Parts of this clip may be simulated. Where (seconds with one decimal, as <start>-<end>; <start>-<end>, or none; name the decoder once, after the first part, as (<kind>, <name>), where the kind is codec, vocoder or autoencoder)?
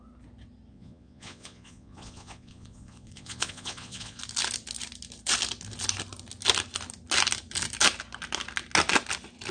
0.7-4.2 (vocoder, Vocos)